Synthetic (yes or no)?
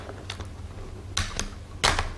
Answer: no